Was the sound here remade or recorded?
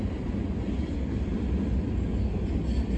recorded